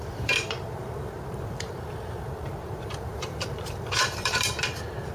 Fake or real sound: fake